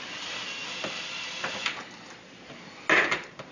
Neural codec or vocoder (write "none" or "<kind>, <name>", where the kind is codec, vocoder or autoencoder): none